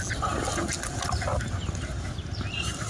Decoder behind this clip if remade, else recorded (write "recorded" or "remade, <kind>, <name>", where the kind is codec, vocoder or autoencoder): recorded